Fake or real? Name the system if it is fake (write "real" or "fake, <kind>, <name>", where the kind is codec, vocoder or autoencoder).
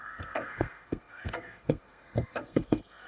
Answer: fake, codec, SNAC